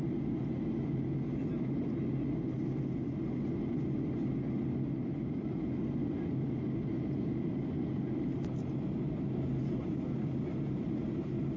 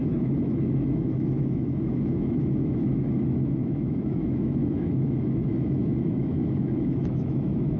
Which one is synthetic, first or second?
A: second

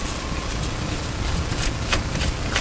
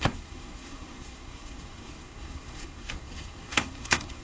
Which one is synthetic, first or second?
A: second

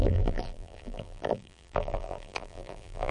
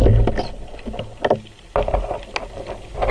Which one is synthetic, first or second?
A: first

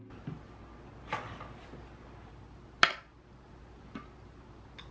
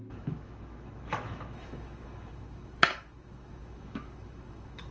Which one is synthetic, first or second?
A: second